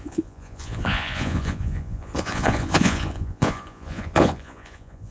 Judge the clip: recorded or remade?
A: remade